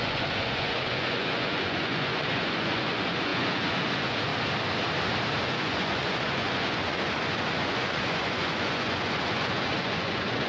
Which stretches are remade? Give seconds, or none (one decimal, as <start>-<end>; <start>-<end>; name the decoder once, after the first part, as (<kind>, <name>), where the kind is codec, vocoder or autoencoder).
0.0-4.3 (vocoder, Vocos); 5.4-10.5